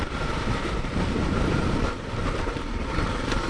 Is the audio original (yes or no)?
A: no